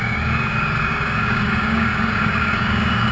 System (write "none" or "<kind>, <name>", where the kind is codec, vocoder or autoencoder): codec, DAC